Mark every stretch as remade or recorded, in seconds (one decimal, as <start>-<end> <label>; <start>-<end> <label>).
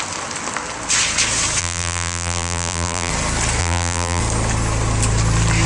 0.0-1.6 recorded; 1.6-3.1 remade; 3.1-3.6 recorded; 3.6-4.2 remade; 4.2-5.7 recorded